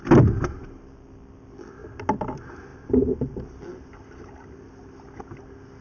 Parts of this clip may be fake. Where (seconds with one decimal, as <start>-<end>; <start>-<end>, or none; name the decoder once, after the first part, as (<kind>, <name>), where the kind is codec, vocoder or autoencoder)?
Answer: none